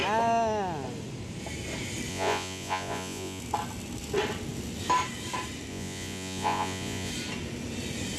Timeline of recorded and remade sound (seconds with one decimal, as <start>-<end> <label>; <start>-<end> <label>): 0.0-2.1 recorded; 2.1-3.4 remade; 3.4-5.7 recorded; 5.7-7.1 remade; 7.1-8.2 recorded